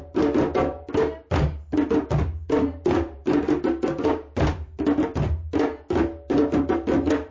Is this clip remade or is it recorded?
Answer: recorded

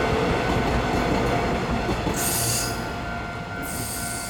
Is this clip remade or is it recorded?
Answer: recorded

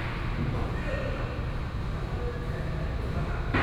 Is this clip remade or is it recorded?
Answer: recorded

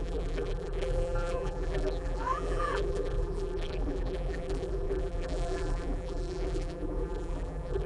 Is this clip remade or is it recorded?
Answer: remade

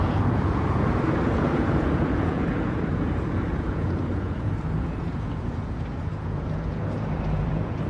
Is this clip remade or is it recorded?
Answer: remade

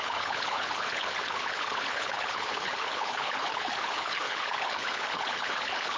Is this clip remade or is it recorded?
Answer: remade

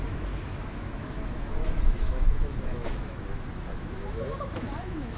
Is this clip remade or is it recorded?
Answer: remade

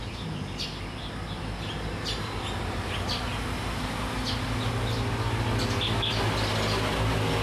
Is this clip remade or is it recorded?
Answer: recorded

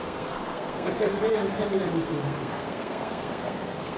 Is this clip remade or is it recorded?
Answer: remade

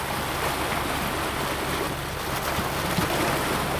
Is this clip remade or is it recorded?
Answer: recorded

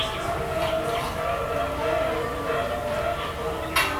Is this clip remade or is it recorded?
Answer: recorded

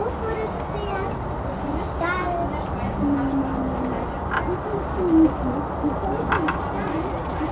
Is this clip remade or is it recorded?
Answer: recorded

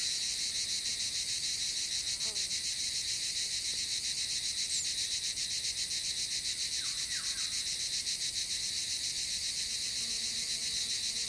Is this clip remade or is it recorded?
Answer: recorded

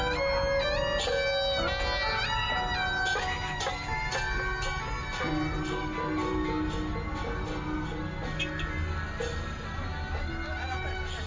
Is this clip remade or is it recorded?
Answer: recorded